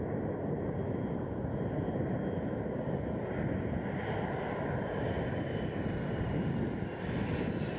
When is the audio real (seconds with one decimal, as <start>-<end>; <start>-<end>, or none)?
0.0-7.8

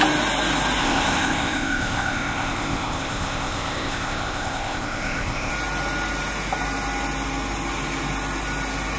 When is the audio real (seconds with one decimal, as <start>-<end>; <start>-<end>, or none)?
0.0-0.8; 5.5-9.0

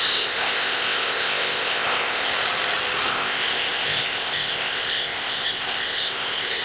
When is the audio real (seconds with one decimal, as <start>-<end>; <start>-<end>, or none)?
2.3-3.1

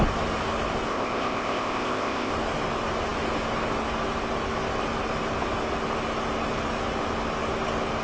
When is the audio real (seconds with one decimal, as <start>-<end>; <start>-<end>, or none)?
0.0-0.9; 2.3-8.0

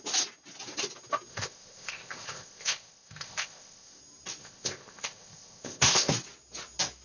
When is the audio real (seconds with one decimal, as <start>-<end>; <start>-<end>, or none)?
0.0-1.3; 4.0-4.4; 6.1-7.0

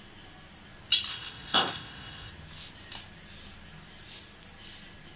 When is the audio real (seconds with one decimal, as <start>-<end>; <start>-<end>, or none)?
0.0-1.1; 2.3-5.2